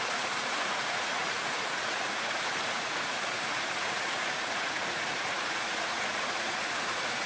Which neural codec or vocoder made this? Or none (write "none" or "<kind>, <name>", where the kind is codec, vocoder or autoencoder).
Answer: vocoder, Vocos